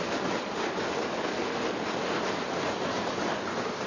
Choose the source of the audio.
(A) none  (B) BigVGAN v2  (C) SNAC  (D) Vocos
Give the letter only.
A